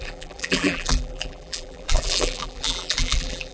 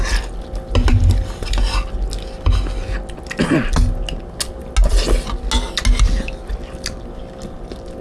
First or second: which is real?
second